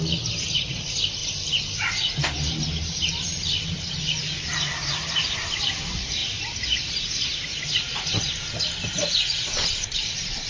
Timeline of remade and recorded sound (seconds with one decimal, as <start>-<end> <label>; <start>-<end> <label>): 0.0-6.2 remade; 6.2-6.8 recorded; 6.8-10.5 remade